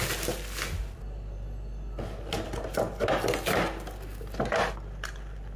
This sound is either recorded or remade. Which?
recorded